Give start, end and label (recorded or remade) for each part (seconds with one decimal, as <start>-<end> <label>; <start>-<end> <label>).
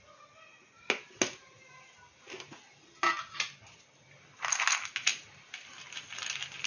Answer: 0.0-6.7 recorded